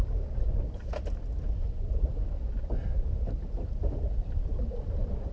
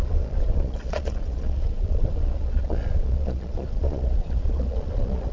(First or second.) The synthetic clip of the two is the second